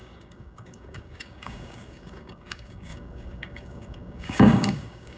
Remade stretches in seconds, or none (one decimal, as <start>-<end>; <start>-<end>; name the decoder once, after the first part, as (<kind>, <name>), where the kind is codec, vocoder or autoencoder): 0.0-5.2 (codec, DAC)